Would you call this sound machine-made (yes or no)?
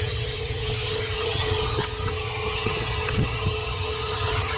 yes